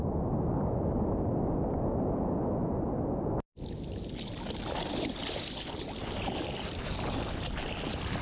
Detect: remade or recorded recorded